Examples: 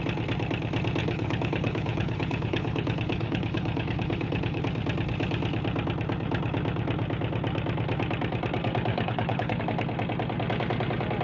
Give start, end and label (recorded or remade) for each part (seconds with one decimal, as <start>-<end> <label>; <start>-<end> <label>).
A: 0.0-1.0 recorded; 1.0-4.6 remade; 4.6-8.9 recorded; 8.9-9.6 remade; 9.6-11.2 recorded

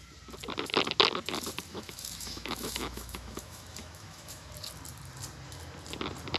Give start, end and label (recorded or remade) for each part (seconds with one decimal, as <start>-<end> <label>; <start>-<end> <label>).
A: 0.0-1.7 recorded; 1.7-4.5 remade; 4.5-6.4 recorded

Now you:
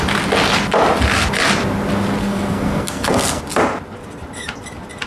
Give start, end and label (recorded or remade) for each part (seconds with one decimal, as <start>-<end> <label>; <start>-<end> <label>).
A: 0.0-2.2 recorded; 2.2-3.4 remade; 3.4-5.1 recorded